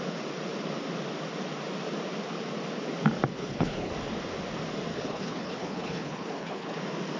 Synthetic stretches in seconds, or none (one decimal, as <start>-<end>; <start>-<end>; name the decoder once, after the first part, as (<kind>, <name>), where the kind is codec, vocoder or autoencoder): 3.3-3.9 (codec, HILCodec); 4.9-6.8